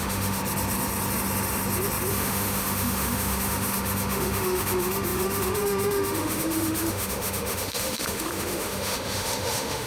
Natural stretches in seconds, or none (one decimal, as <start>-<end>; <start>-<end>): 0.4-2.1